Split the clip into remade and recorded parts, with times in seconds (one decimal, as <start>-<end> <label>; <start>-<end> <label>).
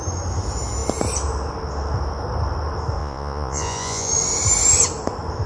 0.0-3.0 recorded; 3.0-4.1 remade; 4.1-5.5 recorded